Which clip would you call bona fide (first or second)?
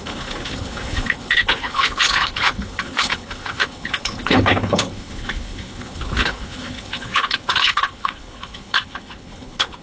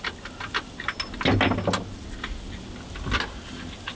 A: second